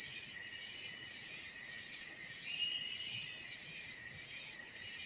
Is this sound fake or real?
fake